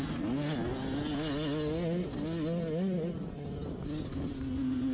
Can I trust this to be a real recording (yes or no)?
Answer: yes